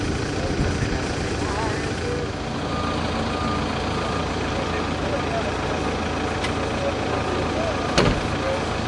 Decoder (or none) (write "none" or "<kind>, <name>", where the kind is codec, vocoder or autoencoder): none